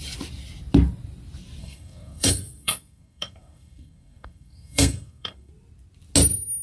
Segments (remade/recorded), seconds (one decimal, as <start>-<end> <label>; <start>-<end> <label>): 0.0-1.6 recorded; 1.6-5.5 remade; 5.5-6.6 recorded